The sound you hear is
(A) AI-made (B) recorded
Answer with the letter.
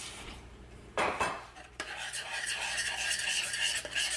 A